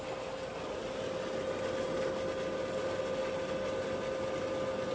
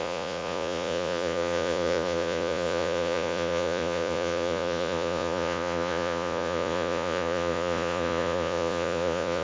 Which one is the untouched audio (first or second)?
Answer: first